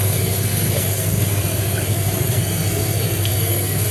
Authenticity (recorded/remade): remade